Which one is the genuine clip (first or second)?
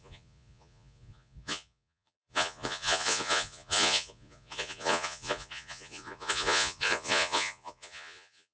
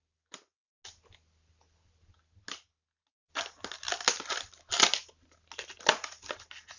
second